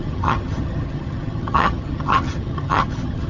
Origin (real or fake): fake